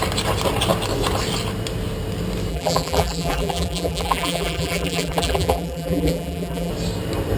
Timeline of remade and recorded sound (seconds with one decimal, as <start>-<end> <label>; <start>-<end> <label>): 0.0-2.5 recorded; 2.5-6.7 remade; 6.7-7.4 recorded